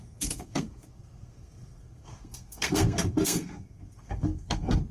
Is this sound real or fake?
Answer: fake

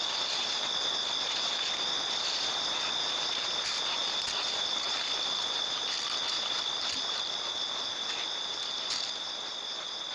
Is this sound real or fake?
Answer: real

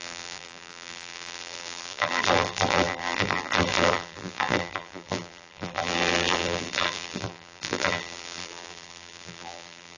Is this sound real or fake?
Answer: fake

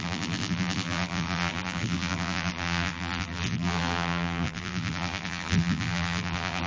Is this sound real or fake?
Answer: fake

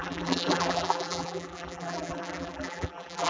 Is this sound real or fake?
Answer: fake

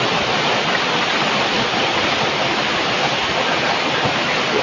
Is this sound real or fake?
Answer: real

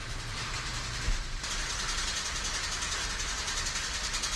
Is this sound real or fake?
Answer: real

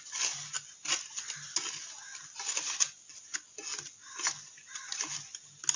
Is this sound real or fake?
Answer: real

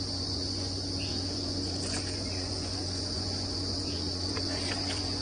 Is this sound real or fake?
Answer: fake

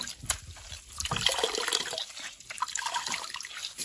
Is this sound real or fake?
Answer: real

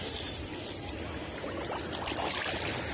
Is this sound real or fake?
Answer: fake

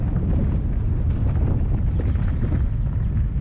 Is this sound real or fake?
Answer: real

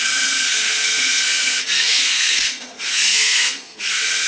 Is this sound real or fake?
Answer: fake